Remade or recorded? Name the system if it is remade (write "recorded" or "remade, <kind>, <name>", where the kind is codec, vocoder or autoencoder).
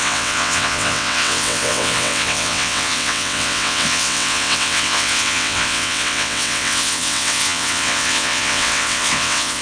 remade, vocoder, WaveNeXt